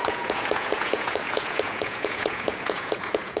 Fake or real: fake